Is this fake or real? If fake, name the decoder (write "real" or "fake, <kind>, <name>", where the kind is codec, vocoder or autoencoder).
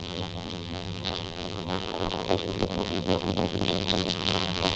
fake, vocoder, BigVGAN v2